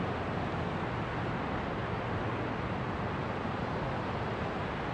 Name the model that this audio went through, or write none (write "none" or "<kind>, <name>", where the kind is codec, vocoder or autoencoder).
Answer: none